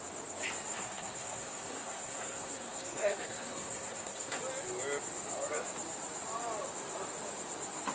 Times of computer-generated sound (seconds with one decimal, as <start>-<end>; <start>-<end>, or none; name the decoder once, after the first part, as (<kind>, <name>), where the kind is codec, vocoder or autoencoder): 0.7-4.4 (codec, SNAC)